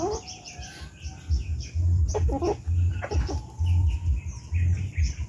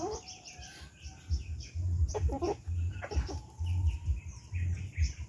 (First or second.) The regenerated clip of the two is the second